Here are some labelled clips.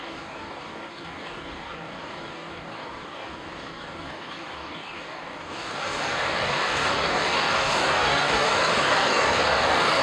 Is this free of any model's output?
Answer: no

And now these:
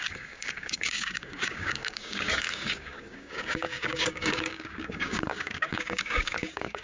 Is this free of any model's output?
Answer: no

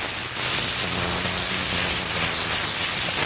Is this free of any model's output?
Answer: yes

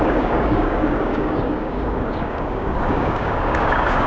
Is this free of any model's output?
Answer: no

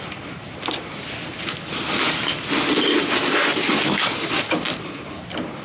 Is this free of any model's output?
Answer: yes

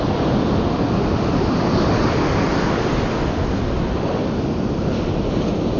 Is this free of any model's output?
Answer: yes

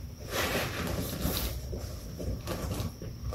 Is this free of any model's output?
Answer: yes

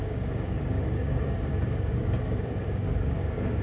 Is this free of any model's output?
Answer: no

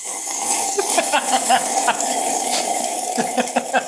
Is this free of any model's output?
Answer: no